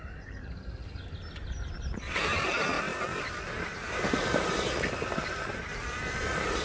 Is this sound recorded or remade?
recorded